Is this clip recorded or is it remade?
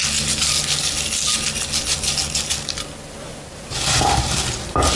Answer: recorded